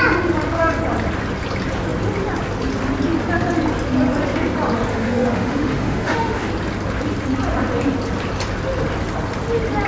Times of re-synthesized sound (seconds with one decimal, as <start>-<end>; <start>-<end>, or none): 4.9-6.5